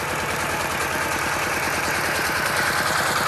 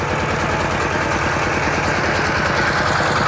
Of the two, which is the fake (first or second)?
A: first